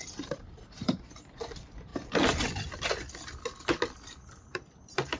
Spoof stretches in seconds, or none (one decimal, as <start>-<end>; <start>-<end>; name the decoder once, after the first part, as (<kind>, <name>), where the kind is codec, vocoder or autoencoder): 0.0-1.2 (vocoder, BigVGAN v2)